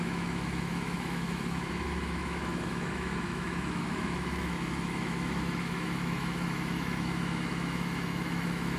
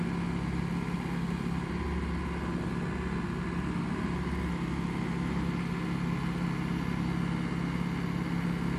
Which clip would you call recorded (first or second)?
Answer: second